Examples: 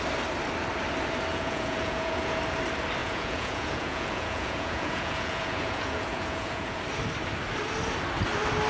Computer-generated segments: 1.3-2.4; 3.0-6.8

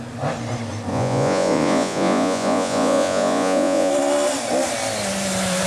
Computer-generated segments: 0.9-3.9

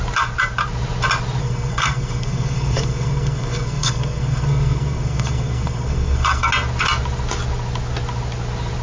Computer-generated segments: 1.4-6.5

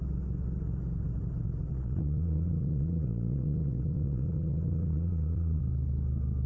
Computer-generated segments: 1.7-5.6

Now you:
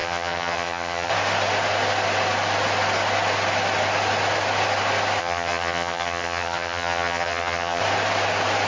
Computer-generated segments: 0.0-1.1; 5.2-7.8